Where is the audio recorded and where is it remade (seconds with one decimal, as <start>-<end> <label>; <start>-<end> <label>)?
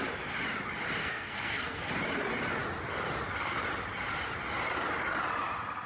0.0-1.0 recorded; 1.0-1.9 remade; 1.9-5.9 recorded